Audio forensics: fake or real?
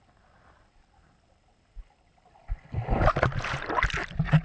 real